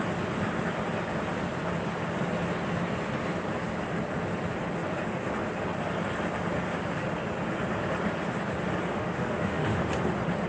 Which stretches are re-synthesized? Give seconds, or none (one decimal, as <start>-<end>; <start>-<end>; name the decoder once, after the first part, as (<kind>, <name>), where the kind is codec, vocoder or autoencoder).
8.9-9.9 (autoencoder, DAC-VAE)